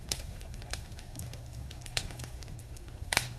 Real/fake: fake